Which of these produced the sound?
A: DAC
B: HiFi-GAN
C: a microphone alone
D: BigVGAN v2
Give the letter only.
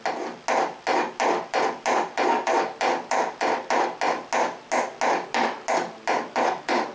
C